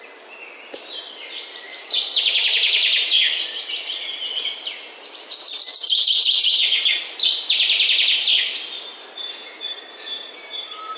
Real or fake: real